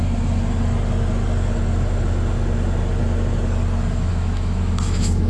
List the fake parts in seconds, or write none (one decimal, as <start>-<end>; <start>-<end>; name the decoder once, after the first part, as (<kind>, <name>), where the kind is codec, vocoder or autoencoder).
4.1-5.3 (autoencoder, DAC-VAE)